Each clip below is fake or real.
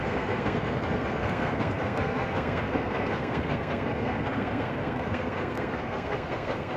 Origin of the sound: fake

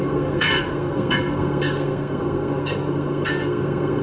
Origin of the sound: fake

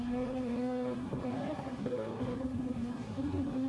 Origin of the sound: fake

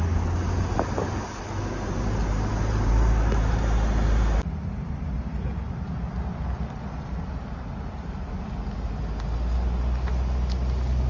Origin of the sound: real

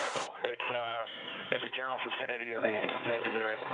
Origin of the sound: fake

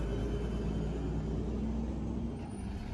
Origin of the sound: real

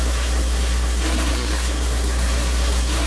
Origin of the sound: fake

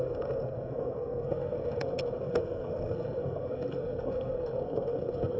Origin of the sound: fake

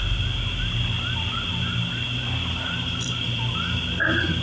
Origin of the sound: real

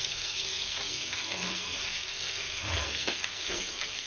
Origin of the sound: fake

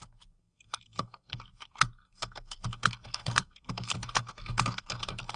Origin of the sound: fake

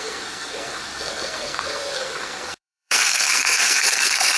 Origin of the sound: fake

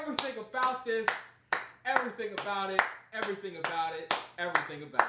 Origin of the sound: real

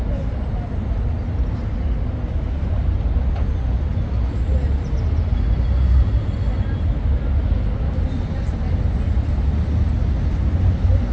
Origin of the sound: real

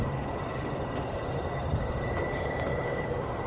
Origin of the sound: real